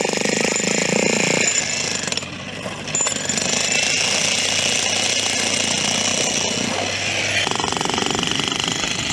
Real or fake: real